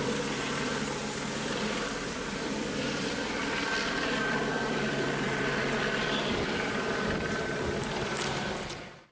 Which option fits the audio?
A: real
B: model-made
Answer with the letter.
B